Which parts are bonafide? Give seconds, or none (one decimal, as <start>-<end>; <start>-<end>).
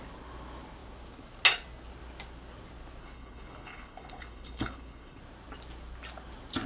0.0-3.0; 5.2-6.7